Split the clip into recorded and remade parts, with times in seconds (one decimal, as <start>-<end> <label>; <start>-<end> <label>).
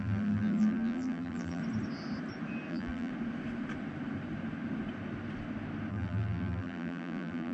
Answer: 0.0-1.6 remade; 1.6-2.7 recorded; 2.7-3.1 remade; 3.1-5.9 recorded; 5.9-7.5 remade